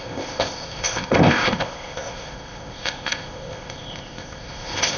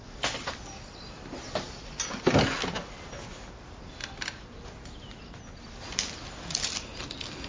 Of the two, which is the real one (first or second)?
second